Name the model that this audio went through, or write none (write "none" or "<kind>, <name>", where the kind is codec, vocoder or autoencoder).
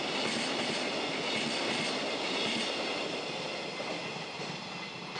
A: none